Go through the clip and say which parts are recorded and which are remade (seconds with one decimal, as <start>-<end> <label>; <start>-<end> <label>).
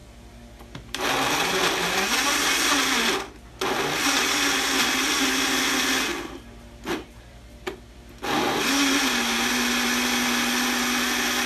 0.0-11.5 recorded